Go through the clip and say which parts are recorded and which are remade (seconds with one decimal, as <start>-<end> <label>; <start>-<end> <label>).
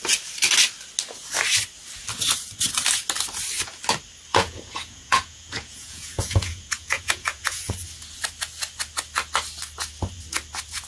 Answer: 0.0-4.3 recorded; 4.3-7.7 remade; 7.7-10.9 recorded